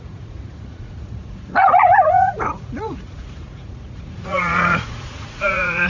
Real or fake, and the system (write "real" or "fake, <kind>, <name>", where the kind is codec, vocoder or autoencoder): fake, vocoder, Vocos